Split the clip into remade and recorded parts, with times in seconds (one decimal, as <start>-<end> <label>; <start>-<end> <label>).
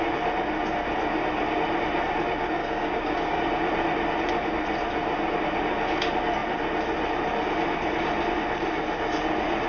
0.0-2.6 recorded; 2.6-3.4 remade; 3.4-9.7 recorded